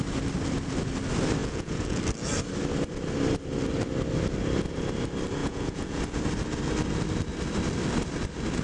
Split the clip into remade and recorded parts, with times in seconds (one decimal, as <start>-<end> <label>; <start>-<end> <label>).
0.0-1.4 recorded; 1.4-2.0 remade; 2.0-5.4 recorded; 5.4-6.0 remade; 6.0-8.6 recorded